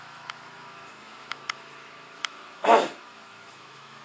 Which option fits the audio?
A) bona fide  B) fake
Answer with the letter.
B